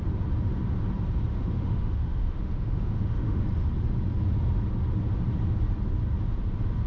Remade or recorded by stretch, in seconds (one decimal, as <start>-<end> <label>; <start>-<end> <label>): 0.0-1.3 recorded; 1.3-3.4 remade; 3.4-6.9 recorded

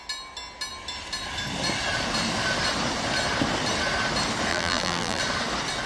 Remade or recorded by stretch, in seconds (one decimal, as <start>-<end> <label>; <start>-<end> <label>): 0.0-4.5 recorded; 4.5-5.2 remade; 5.2-5.9 recorded

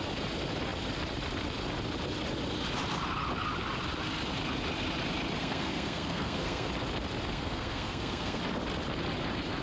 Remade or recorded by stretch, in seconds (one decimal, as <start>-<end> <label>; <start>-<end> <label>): 0.0-5.4 recorded; 5.4-6.7 remade; 6.7-7.3 recorded; 7.3-8.4 remade; 8.4-9.6 recorded

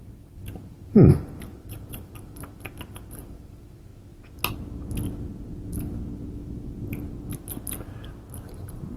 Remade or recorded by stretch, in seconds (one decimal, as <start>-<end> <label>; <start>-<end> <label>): 0.0-3.9 remade; 3.9-8.5 recorded; 8.5-9.0 remade

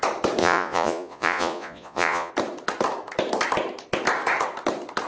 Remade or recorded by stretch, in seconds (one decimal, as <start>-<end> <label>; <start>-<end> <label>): 0.0-0.4 recorded; 0.4-2.3 remade; 2.3-5.1 recorded